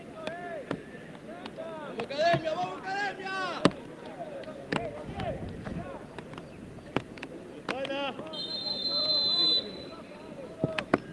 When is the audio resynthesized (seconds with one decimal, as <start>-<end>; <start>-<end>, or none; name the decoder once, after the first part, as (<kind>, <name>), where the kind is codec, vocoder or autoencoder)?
none